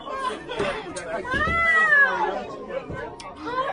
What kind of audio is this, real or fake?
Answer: real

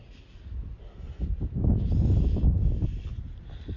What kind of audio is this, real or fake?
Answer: real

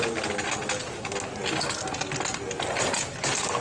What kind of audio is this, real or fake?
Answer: real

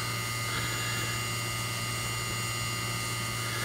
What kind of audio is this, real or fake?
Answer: real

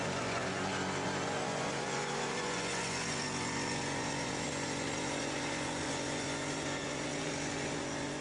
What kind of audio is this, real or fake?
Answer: fake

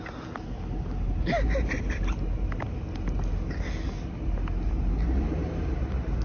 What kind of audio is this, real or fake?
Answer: real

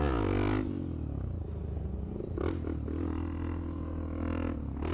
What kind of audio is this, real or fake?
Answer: real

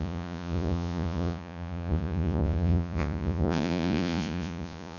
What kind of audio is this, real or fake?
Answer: fake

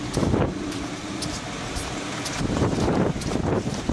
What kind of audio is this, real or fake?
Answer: fake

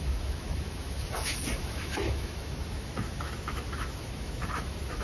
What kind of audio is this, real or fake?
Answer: fake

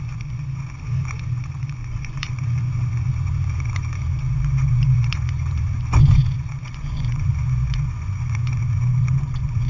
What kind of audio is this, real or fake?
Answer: fake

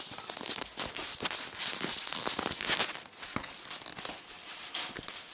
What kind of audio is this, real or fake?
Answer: real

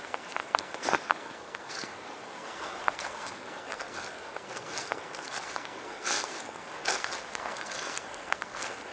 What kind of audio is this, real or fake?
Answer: fake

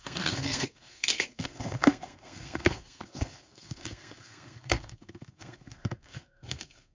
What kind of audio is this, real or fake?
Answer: fake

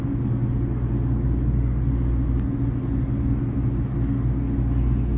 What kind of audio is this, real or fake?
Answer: real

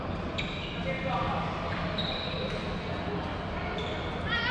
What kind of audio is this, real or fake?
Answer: real